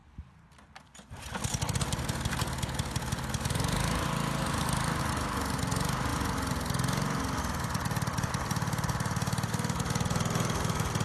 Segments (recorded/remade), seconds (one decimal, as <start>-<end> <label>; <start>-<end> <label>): 0.0-11.0 recorded